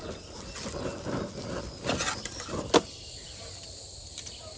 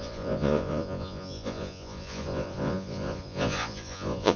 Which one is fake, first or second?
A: second